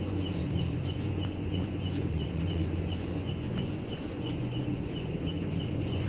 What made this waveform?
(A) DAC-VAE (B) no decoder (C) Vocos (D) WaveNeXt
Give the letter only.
C